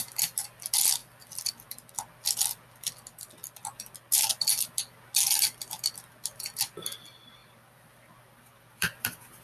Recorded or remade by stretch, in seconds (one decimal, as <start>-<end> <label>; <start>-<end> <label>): 0.0-1.0 recorded; 1.0-1.6 remade; 1.6-7.4 recorded; 7.4-9.4 remade